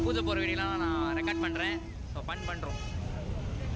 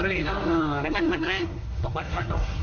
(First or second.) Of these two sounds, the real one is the first